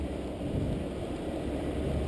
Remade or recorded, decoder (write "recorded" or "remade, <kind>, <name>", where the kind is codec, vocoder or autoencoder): remade, vocoder, BigVGAN v2